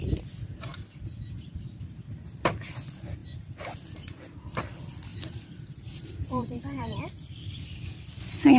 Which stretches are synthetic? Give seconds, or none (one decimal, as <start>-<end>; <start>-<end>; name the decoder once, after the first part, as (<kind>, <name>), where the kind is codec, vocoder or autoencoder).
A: 0.7-1.5 (vocoder, BigVGAN v2); 5.1-7.0